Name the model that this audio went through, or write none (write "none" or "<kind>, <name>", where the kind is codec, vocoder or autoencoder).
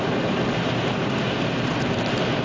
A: none